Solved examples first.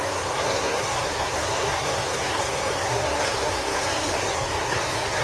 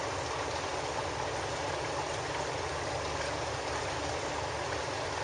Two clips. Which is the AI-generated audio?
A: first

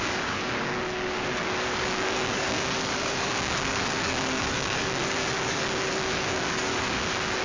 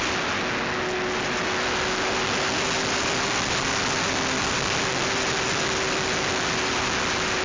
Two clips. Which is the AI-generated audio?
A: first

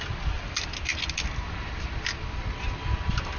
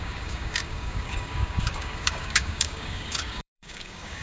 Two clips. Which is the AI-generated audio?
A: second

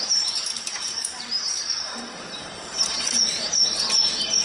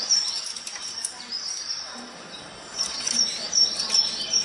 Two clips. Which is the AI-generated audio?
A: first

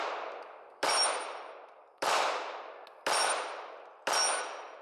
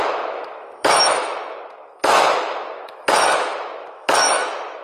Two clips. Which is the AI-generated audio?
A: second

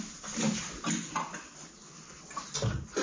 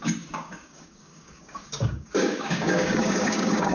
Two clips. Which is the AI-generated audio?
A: second